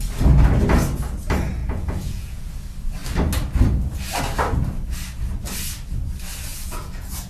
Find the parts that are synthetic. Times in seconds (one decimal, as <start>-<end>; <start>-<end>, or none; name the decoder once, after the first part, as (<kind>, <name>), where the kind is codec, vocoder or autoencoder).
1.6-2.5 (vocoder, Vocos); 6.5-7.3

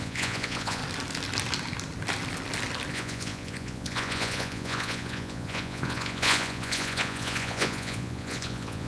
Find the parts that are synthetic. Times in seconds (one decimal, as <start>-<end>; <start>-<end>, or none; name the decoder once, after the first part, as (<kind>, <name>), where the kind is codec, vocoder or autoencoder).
0.0-0.8 (vocoder, Vocos); 2.9-8.9

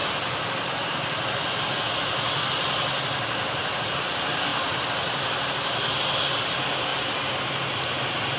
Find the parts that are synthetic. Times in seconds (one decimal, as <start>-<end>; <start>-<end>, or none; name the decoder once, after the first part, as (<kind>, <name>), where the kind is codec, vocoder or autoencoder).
none

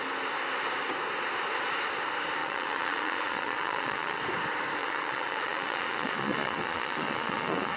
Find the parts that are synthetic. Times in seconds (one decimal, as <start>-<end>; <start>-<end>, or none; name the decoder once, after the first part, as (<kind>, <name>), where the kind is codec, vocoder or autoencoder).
2.4-4.2 (vocoder, Vocos); 4.8-7.8

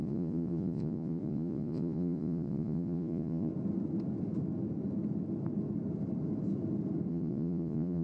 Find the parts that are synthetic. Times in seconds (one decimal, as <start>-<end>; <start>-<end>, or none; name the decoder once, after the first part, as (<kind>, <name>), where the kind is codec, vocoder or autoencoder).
0.0-3.5 (vocoder, Vocos); 7.1-8.0

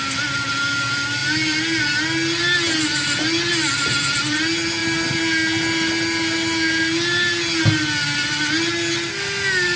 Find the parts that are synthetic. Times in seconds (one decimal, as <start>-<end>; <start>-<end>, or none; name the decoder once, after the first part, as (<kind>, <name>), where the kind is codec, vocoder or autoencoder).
none